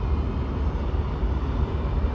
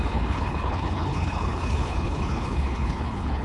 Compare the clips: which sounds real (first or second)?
first